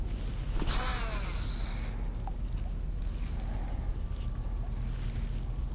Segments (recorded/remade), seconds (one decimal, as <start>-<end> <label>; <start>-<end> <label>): 0.0-5.7 recorded